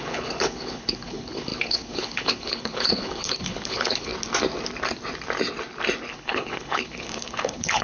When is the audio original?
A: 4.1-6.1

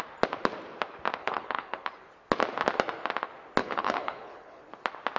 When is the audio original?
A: 0.0-1.2; 1.9-3.6; 4.6-5.2

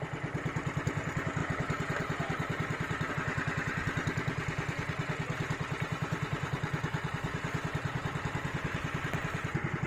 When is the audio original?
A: 0.0-1.4; 3.1-5.7; 7.1-9.9